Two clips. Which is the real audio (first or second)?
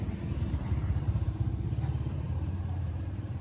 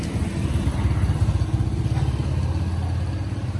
second